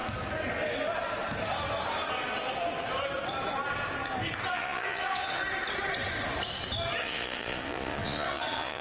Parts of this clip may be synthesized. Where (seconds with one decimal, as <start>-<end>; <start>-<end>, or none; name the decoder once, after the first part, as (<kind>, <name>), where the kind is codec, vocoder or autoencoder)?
4.5-5.4 (vocoder, Vocos); 7.0-8.8